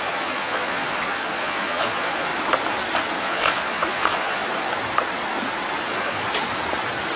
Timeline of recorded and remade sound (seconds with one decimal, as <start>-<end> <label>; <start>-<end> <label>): 0.0-2.3 remade; 2.3-3.2 recorded; 3.2-4.4 remade; 4.4-5.8 recorded; 5.8-6.2 remade; 6.2-7.2 recorded